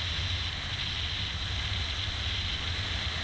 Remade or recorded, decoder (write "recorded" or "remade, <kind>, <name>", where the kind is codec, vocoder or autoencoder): recorded